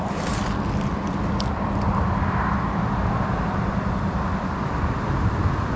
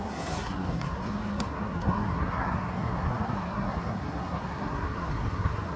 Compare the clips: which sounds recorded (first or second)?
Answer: first